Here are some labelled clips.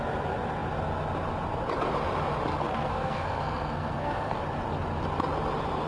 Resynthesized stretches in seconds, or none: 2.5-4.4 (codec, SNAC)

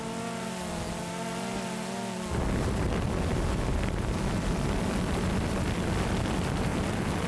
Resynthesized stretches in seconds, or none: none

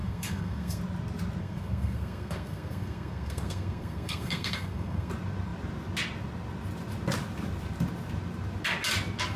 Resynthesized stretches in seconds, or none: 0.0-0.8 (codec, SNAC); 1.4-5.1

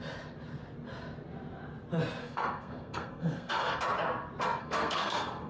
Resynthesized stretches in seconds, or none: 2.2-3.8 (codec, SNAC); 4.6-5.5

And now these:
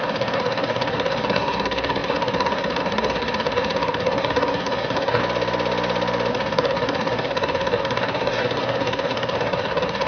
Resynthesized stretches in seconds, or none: 0.0-5.2 (codec, SNAC); 6.3-10.1

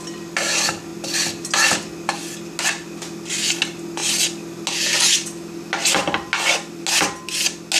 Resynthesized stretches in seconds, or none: none